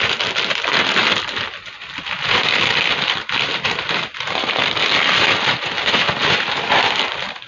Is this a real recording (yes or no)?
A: yes